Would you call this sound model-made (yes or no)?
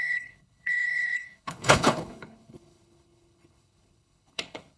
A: yes